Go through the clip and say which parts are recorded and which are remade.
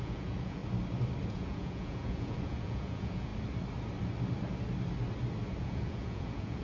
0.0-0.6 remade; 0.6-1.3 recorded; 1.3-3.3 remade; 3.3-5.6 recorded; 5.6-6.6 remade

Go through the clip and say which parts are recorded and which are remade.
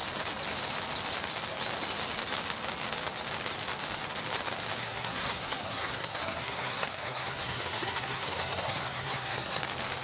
0.0-4.8 recorded; 4.8-9.6 remade; 9.6-10.0 recorded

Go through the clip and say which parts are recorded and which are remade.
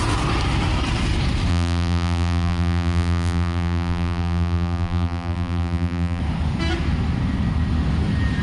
0.0-1.5 recorded; 1.5-6.2 remade; 6.2-8.4 recorded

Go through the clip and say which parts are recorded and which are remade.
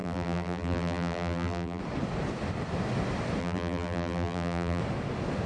0.0-1.8 remade; 1.8-3.4 recorded; 3.4-4.8 remade; 4.8-5.5 recorded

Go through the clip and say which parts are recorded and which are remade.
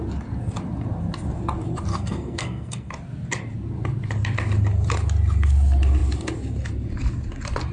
0.0-1.9 recorded; 1.9-2.9 remade; 2.9-7.7 recorded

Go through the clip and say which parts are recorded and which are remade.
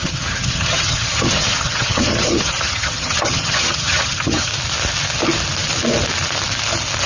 0.0-4.5 remade; 4.5-7.1 recorded